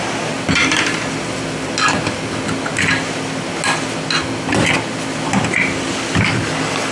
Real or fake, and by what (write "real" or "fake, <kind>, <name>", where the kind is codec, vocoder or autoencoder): real